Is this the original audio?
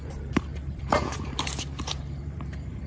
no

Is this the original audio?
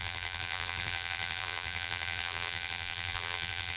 no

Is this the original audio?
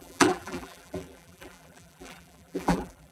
no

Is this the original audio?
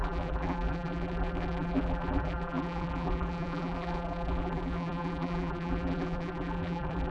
no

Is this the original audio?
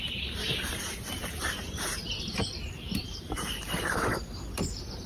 no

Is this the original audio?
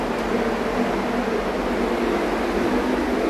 yes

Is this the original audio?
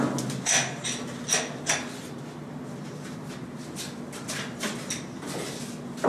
yes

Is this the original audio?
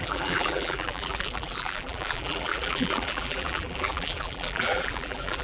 no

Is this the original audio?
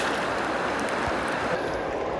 yes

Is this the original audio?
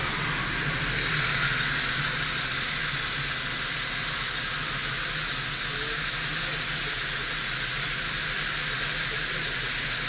yes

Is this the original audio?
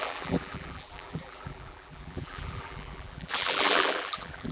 no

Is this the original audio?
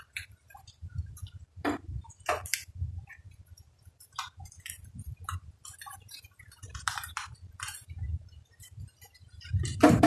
no